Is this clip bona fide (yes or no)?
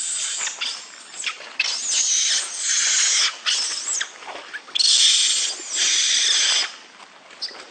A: yes